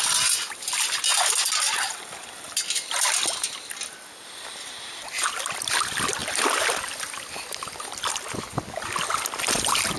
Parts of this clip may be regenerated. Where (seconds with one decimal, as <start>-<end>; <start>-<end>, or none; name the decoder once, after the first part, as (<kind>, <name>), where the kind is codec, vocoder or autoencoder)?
none